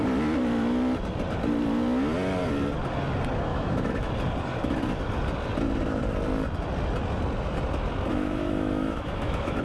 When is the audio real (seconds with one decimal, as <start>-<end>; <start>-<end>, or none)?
0.0-3.5; 4.1-8.1